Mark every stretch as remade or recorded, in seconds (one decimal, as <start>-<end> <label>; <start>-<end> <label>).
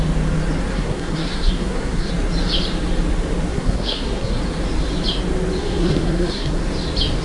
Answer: 0.0-0.7 recorded; 0.7-2.1 remade; 2.1-3.5 recorded; 3.5-4.4 remade; 4.4-5.6 recorded; 5.6-6.6 remade; 6.6-7.2 recorded